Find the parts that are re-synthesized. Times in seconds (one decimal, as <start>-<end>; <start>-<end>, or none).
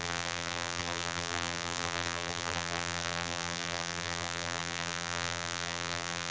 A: 0.0-6.3